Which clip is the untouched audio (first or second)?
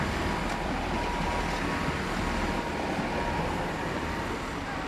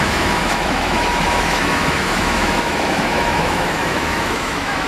first